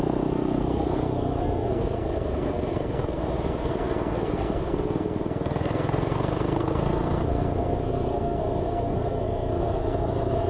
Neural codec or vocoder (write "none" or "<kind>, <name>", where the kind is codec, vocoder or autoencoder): codec, SNAC